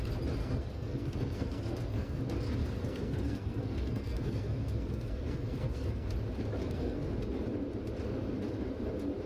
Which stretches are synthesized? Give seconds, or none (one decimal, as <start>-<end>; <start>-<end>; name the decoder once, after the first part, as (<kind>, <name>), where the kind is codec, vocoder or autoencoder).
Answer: 0.4-2.2 (codec, SNAC); 2.6-6.1; 6.6-7.1